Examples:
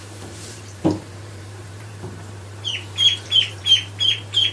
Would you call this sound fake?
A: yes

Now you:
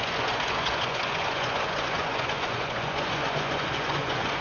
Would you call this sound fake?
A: yes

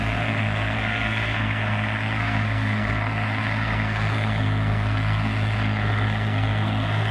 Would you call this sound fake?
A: yes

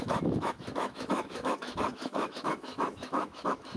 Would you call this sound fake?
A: yes